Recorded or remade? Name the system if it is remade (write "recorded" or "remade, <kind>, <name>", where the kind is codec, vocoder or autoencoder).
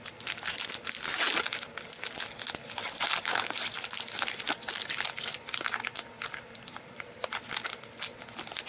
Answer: recorded